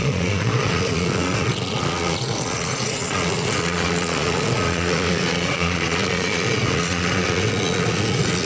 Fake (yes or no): yes